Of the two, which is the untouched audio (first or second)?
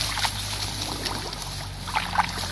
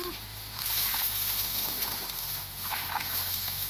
first